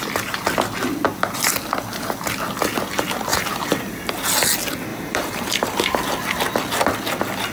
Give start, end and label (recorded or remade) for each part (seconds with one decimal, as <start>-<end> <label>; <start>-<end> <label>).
0.0-3.3 recorded; 3.3-4.1 remade; 4.1-4.9 recorded; 4.9-6.0 remade; 6.0-7.5 recorded